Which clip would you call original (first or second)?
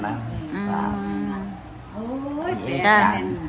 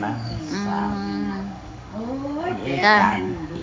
first